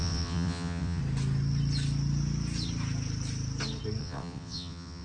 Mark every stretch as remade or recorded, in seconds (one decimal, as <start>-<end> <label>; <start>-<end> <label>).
0.0-1.0 remade; 1.0-4.0 recorded; 4.0-5.0 remade